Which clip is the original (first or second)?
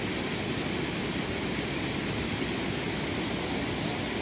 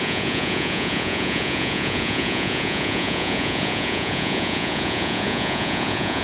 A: first